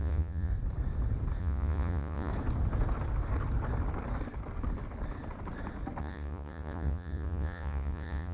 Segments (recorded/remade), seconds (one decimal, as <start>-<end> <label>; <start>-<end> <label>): 0.0-0.5 remade; 0.5-1.4 recorded; 1.4-2.3 remade; 2.3-6.0 recorded; 6.0-8.3 remade